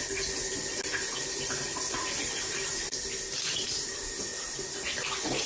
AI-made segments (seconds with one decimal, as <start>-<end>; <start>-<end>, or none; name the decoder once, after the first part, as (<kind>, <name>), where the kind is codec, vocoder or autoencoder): none